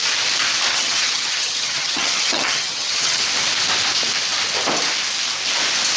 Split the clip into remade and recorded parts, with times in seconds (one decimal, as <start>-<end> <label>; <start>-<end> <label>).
0.0-0.7 recorded; 0.7-3.2 remade; 3.2-6.0 recorded